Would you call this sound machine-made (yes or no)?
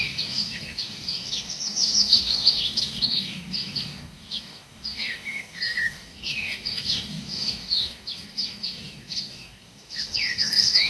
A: yes